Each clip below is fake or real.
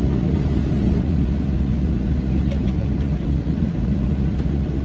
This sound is fake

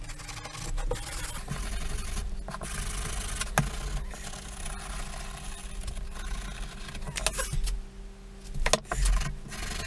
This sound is real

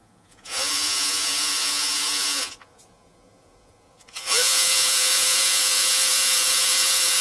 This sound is fake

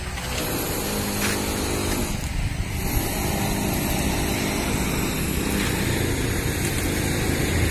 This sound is real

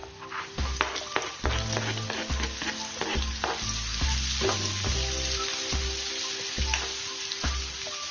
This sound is real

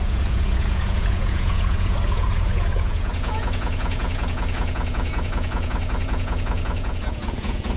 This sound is fake